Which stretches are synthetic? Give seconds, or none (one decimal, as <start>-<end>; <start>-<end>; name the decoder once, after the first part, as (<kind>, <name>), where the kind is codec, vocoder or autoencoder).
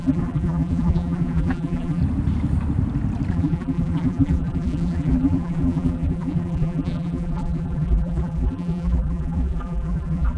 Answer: 0.0-2.0 (vocoder, BigVGAN v2); 3.3-10.4